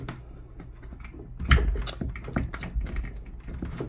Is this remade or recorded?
recorded